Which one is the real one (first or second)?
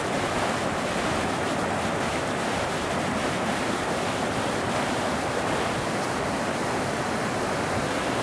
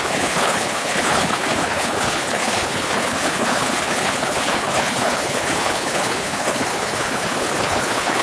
first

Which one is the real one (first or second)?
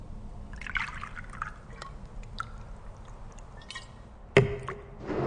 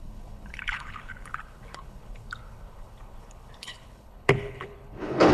first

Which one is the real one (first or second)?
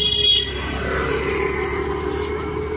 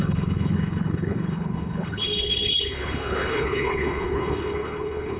first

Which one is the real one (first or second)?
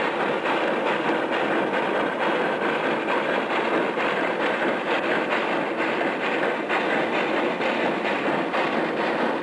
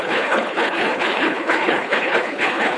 first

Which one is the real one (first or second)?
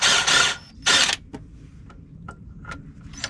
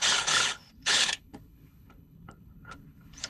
first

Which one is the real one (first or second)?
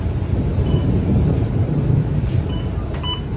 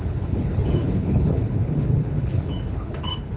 first